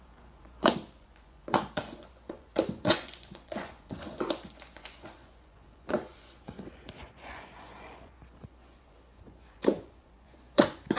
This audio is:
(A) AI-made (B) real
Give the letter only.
A